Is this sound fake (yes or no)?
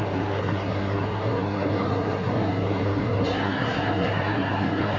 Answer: yes